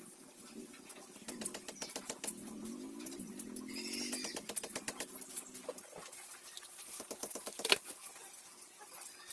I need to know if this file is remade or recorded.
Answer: remade